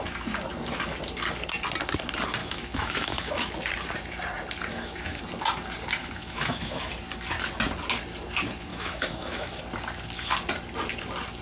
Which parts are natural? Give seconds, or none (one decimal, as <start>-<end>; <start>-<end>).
0.0-2.4; 3.5-4.7; 5.2-6.0; 6.9-8.7; 9.6-11.4